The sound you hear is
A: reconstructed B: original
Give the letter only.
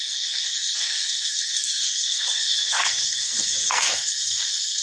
A